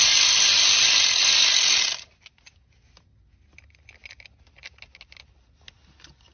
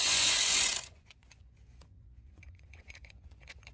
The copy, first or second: second